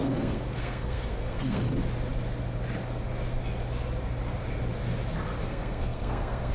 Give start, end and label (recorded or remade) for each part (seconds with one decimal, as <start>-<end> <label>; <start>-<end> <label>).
0.0-1.6 remade; 1.6-5.4 recorded; 5.4-6.5 remade